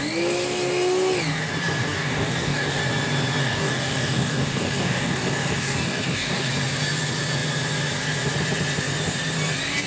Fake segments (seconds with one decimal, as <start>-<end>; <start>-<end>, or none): 1.8-2.8; 3.4-6.5